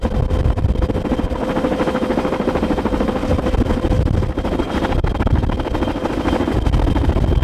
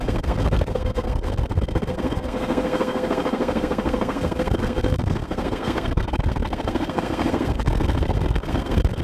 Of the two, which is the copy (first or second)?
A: second